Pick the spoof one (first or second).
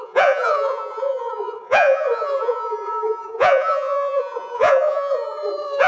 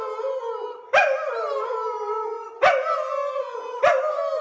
first